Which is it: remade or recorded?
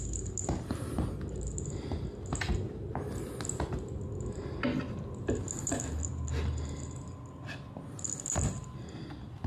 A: recorded